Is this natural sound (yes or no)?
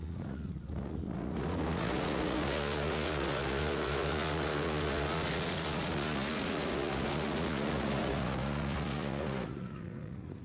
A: no